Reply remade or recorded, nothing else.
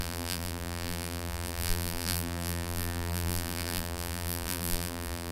remade